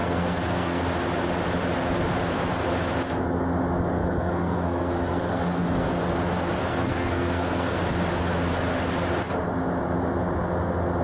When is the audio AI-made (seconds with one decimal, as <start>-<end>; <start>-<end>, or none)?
0.0-0.8; 4.0-5.9; 6.7-7.8